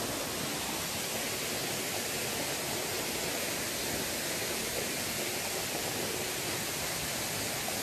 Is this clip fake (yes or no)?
no